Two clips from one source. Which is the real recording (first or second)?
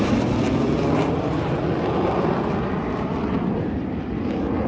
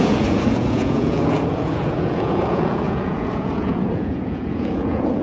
first